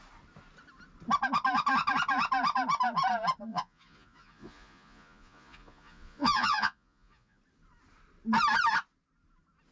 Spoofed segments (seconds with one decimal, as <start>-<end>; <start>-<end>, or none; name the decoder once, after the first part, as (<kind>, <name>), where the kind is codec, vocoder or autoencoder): 3.5-7.4 (vocoder, Vocos)